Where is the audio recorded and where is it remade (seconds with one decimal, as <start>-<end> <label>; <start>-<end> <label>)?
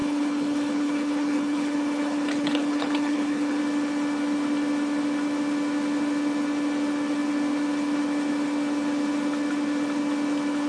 0.0-3.6 remade; 3.6-10.7 recorded